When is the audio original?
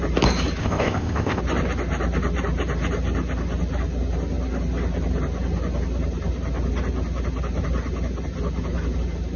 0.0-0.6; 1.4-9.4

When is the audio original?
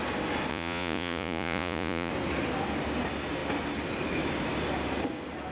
0.0-0.5; 2.1-5.5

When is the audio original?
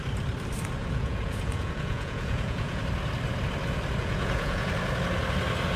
0.0-0.8; 2.8-4.0; 4.7-5.8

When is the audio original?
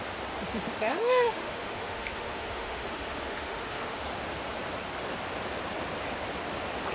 0.0-0.9; 4.0-6.9